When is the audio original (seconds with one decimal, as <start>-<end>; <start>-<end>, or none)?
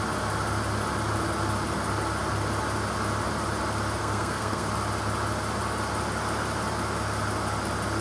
0.0-4.0; 4.7-8.0